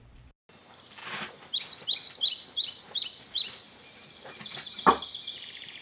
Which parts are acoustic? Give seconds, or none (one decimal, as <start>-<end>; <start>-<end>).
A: 0.0-5.8